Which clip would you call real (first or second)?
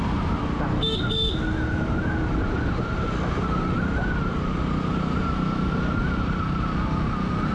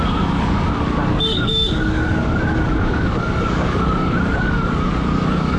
first